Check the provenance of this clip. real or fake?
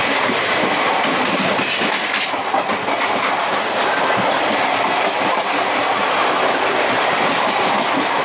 real